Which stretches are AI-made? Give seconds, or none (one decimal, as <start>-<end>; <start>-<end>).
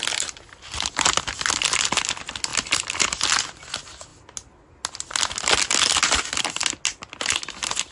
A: none